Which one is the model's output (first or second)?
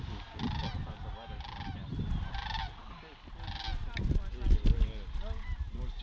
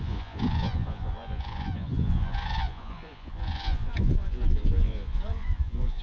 second